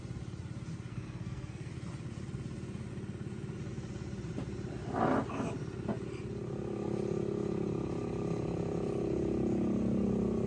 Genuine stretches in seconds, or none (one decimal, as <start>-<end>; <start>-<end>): 0.0-0.9; 1.7-10.5